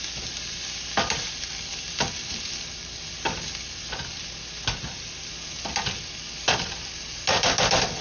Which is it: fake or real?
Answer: real